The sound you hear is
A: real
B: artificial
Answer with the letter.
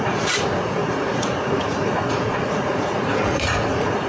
B